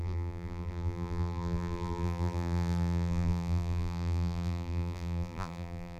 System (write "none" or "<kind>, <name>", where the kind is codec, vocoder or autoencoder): vocoder, BigVGAN v2